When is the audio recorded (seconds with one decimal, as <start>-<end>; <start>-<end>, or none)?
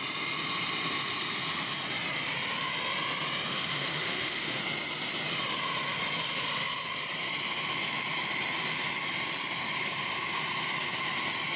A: 0.0-3.5; 4.6-11.6